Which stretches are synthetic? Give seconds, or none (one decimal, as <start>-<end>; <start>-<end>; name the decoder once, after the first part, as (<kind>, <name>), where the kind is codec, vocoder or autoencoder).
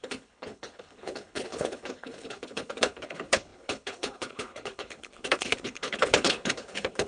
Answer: 0.0-7.1 (codec, HILCodec)